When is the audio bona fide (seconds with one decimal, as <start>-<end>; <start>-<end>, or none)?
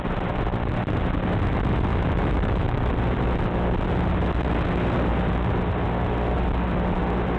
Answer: 0.0-1.9; 2.8-7.4